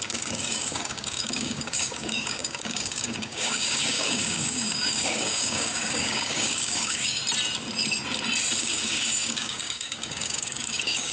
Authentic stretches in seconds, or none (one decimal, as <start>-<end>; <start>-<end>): 7.2-8.6